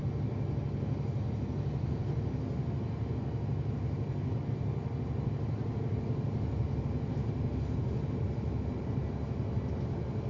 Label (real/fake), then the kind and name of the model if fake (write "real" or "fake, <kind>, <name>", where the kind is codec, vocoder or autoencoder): real